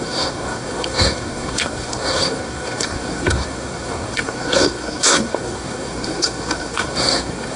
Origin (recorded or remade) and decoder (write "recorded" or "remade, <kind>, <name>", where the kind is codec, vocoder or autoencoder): remade, codec, SNAC